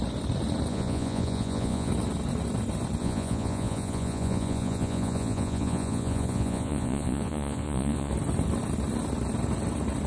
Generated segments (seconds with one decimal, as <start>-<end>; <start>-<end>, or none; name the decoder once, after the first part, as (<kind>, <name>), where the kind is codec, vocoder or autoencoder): 0.7-1.9 (vocoder, Vocos); 3.0-8.1